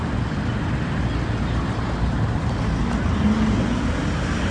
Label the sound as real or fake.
real